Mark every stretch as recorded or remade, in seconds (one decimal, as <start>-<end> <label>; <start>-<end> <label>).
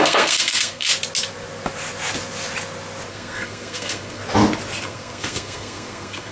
0.0-0.9 remade; 0.9-3.1 recorded; 3.1-4.2 remade; 4.2-4.8 recorded; 4.8-6.3 remade